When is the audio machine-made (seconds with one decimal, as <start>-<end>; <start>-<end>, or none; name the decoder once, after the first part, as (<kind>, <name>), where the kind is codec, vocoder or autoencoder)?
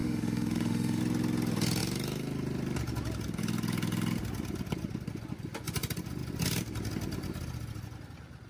0.0-1.0 (autoencoder, DAC-VAE)